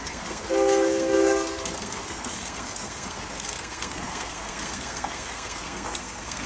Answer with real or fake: fake